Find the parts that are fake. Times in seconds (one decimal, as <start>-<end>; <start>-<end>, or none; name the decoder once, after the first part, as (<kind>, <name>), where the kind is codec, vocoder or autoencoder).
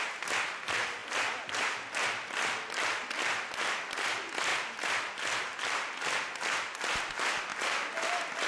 none